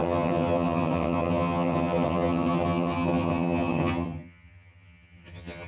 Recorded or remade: remade